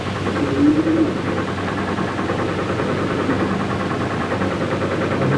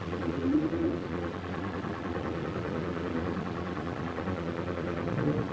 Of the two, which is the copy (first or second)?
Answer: second